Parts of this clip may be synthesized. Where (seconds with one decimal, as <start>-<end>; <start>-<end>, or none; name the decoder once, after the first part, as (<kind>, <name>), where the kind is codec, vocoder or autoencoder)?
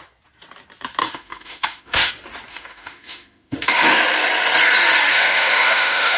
1.0-2.1 (autoencoder, DAC-VAE); 2.5-4.0; 5.1-6.2